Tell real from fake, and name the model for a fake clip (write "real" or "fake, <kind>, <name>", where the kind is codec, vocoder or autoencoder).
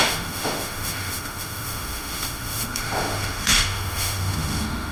fake, autoencoder, DAC-VAE